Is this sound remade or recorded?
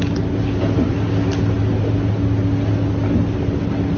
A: recorded